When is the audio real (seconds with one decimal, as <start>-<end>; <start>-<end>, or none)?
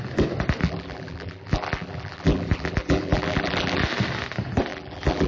0.0-0.6; 3.8-4.7